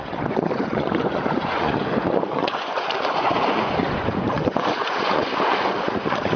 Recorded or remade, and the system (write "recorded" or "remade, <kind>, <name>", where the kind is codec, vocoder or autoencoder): remade, vocoder, Vocos